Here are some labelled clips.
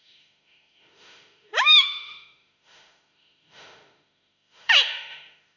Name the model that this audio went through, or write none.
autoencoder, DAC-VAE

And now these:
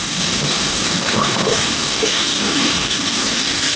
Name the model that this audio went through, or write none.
codec, DAC